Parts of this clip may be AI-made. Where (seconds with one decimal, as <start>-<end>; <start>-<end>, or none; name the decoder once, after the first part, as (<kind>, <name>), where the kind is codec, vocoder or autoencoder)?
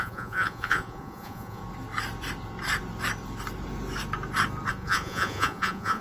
0.0-1.6 (vocoder, Vocos); 4.7-6.0